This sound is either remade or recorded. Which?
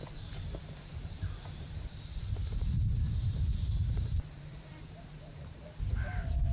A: remade